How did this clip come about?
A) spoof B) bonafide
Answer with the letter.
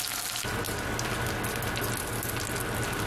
B